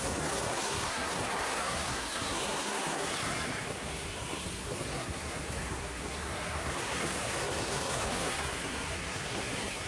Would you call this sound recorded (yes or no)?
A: no